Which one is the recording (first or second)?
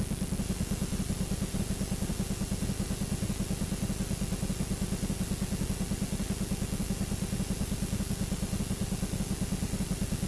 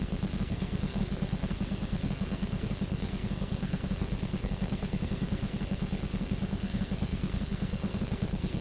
first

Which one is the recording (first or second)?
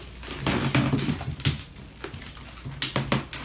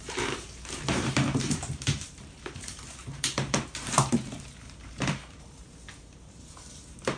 first